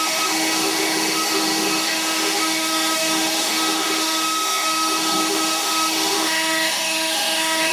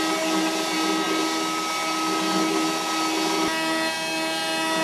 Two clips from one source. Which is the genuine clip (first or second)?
second